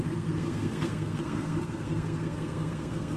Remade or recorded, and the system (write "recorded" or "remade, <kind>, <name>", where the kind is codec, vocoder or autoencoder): remade, codec, SNAC